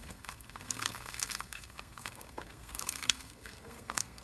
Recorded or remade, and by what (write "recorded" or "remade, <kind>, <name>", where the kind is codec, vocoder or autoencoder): remade, codec, SNAC